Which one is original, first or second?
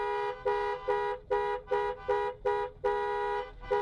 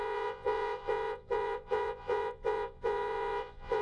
first